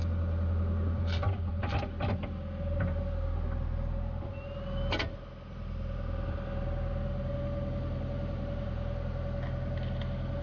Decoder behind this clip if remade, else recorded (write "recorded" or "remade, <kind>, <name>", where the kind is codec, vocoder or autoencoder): recorded